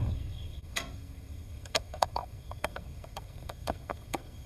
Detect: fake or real fake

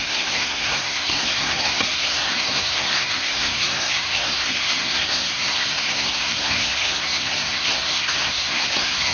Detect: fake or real fake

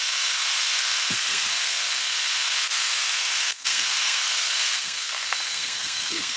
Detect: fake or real fake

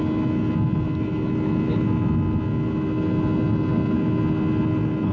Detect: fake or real real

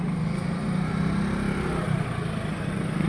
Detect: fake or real real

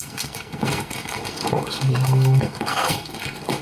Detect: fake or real fake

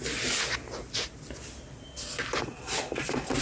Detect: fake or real real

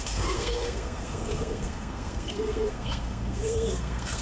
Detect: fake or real fake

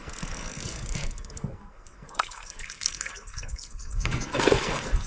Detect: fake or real fake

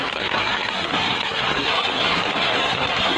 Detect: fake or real fake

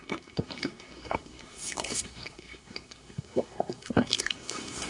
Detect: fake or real fake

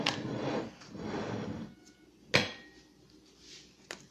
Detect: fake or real real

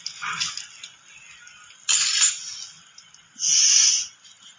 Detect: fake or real real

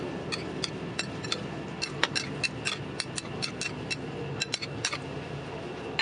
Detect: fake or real real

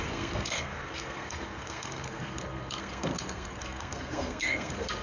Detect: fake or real fake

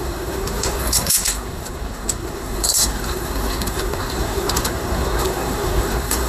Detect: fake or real fake